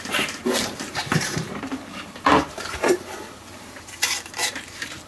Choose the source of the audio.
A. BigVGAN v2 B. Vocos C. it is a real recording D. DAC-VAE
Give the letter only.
A